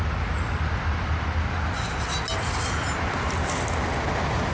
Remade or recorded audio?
recorded